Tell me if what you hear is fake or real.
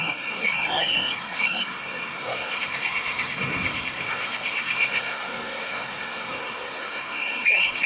fake